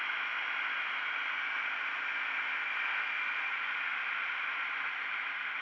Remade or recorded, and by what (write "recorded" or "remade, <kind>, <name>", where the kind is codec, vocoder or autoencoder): recorded